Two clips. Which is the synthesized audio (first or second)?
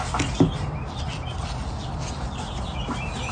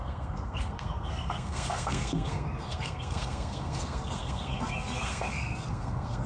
second